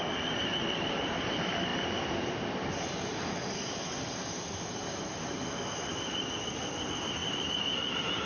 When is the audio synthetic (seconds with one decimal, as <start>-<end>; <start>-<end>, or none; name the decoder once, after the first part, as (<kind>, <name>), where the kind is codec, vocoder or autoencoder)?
1.7-4.3 (vocoder, BigVGAN v2)